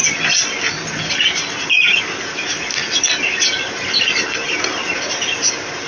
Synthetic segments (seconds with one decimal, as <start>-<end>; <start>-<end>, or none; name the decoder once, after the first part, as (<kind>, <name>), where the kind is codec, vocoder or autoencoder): none